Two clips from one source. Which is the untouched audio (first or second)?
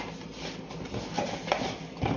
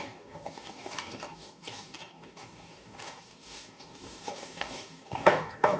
first